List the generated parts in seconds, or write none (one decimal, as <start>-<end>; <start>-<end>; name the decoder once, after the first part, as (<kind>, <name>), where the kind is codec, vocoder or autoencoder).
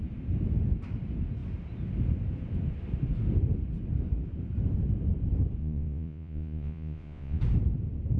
5.6-7.4 (vocoder, Vocos)